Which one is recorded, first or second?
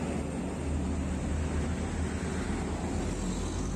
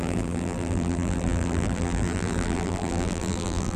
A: first